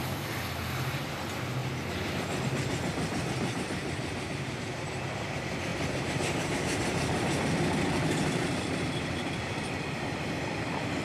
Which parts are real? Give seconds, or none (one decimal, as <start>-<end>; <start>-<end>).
0.0-5.7; 8.8-11.0